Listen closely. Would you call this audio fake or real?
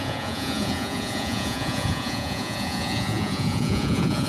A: fake